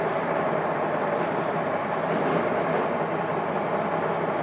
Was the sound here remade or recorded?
recorded